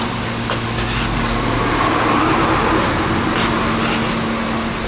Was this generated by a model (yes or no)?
no